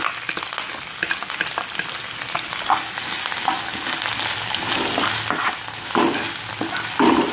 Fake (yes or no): no